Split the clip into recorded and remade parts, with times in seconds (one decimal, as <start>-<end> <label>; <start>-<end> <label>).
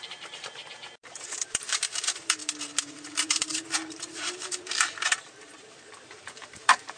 0.0-2.4 remade; 2.4-2.9 recorded; 2.9-7.0 remade